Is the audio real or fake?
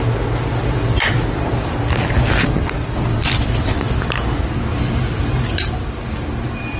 real